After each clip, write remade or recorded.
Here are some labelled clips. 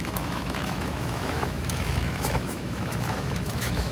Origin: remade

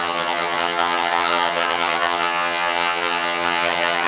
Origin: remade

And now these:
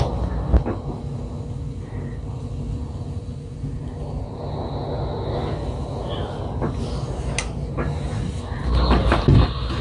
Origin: recorded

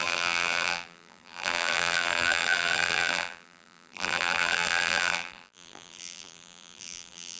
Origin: remade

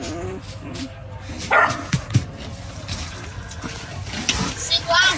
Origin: recorded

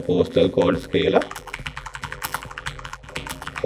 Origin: remade